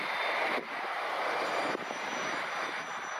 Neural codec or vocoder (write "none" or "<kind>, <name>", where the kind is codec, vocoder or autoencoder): none